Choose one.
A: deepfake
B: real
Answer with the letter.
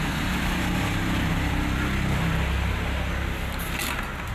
B